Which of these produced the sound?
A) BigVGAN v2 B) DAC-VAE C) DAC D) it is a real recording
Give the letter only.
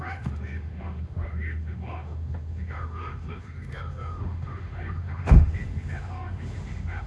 B